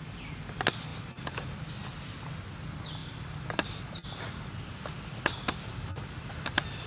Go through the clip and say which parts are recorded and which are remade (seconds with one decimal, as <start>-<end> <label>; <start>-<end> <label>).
0.0-0.9 recorded; 0.9-1.6 remade; 1.6-3.0 recorded; 3.0-6.3 remade; 6.3-6.9 recorded